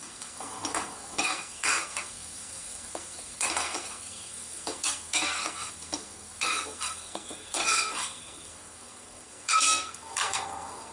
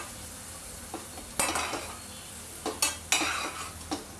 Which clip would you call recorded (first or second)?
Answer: second